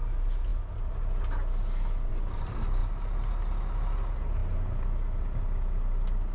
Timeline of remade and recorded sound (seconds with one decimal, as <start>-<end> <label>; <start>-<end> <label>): 0.0-6.3 recorded